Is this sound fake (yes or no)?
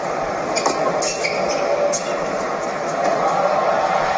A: no